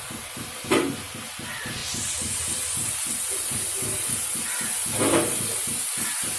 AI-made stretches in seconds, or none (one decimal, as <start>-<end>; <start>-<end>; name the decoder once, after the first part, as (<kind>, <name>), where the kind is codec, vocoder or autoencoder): none